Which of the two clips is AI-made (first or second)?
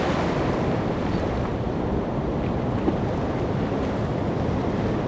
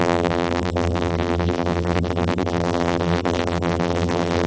second